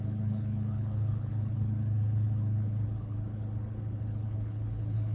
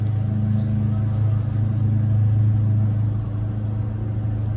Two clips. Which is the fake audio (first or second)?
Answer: first